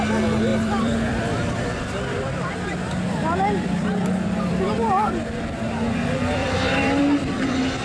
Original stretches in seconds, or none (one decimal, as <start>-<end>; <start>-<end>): 0.0-0.5; 5.2-6.4; 7.0-7.8